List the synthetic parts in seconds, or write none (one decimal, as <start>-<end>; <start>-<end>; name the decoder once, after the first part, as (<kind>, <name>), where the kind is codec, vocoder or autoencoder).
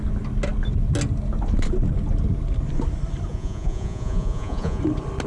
3.3-4.8 (vocoder, Vocos)